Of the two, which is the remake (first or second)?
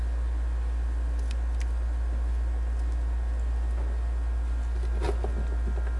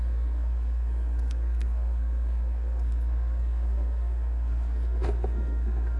second